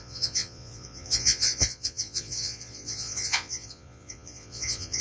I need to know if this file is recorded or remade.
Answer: remade